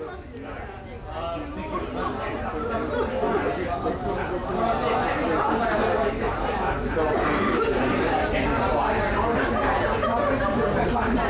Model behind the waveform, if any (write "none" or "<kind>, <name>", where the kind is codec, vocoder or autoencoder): none